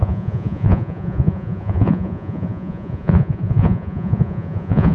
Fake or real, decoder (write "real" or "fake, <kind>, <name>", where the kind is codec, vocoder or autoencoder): fake, vocoder, Vocos